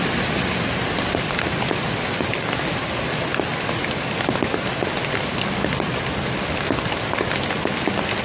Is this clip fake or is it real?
real